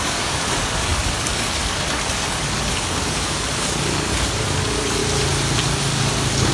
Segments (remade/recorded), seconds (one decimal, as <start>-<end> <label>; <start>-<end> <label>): 0.0-5.0 remade; 5.0-5.8 recorded; 5.8-6.5 remade